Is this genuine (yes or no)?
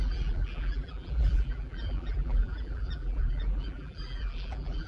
no